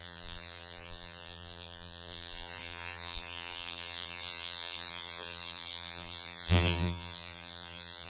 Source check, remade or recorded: remade